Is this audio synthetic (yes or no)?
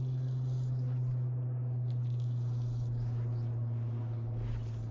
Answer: no